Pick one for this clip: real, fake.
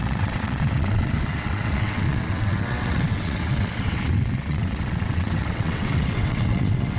fake